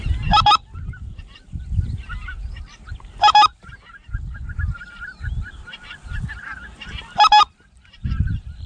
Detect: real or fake real